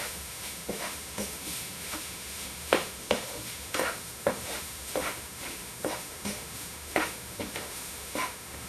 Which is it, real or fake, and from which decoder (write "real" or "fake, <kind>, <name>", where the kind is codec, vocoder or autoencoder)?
fake, autoencoder, DAC-VAE